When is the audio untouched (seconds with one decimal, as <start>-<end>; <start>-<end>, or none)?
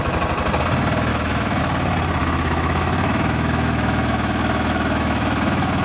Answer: 0.0-1.1; 1.6-2.2